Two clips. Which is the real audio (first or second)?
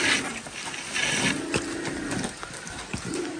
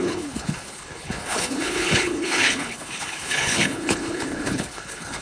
first